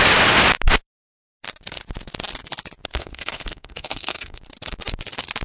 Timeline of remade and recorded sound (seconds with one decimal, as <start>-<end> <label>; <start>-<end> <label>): 0.0-2.9 recorded; 2.9-4.4 remade; 4.4-5.4 recorded